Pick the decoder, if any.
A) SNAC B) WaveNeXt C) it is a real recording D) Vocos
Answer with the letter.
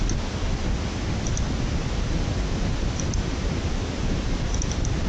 C